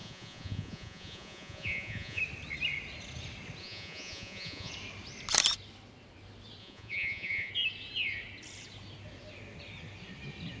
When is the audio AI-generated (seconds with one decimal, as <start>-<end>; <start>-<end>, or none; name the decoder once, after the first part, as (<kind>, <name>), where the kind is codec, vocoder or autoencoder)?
0.0-2.2 (vocoder, Vocos); 3.6-4.7; 6.6-7.5